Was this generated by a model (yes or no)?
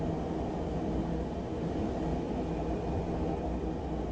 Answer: no